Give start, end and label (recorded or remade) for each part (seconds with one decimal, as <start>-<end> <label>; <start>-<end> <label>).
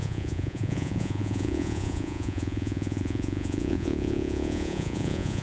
0.0-5.4 remade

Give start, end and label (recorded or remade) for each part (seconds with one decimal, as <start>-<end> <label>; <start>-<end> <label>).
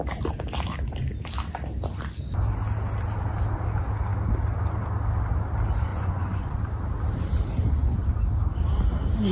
0.0-5.9 recorded; 5.9-6.5 remade; 6.5-9.3 recorded